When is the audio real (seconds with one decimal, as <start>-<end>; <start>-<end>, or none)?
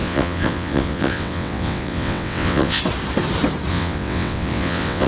2.8-3.7